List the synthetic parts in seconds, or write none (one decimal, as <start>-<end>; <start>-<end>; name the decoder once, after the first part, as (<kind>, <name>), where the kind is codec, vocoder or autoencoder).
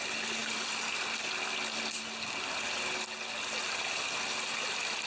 none